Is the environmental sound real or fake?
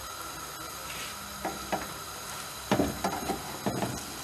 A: real